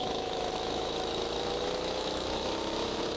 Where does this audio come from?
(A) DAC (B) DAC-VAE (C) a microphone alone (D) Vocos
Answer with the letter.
B